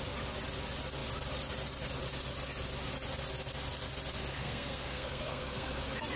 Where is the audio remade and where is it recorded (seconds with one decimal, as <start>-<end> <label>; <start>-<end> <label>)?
0.0-4.3 recorded; 4.3-5.7 remade; 5.7-6.2 recorded